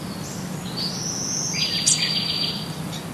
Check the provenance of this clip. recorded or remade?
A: recorded